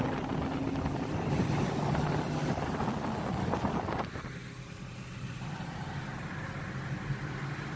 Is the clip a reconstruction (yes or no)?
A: no